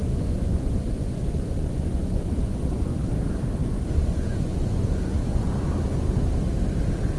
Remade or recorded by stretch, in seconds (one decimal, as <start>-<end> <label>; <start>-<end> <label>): 0.0-3.0 remade; 3.0-3.6 recorded; 3.6-6.1 remade; 6.1-7.2 recorded